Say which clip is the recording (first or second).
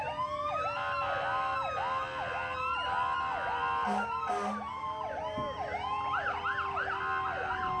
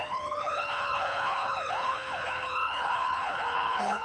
first